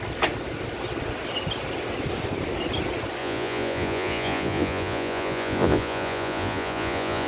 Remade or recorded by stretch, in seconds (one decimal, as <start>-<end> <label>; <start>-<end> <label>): 0.0-3.2 recorded; 3.2-7.3 remade